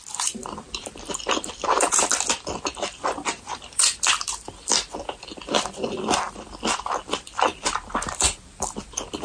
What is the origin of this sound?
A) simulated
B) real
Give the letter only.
A